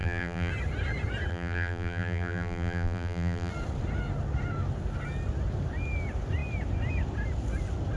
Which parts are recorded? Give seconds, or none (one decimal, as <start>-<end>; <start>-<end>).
0.5-1.3; 3.5-8.0